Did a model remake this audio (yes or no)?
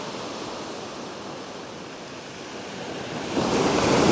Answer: no